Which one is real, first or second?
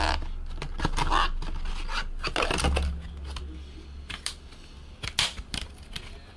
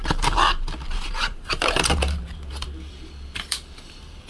first